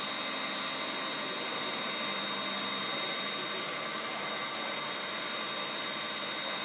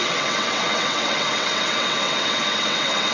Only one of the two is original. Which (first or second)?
first